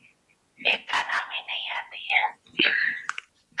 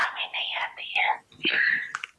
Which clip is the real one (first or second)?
second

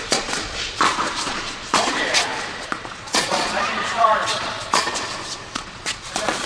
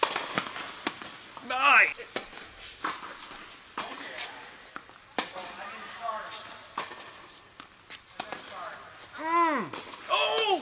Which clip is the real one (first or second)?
second